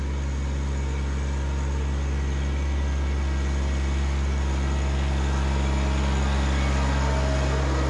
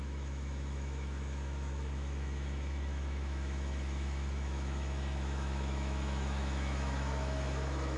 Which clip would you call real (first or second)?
first